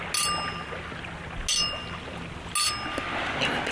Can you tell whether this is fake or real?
real